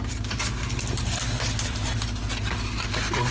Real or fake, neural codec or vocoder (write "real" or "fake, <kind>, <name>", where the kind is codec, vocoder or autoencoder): real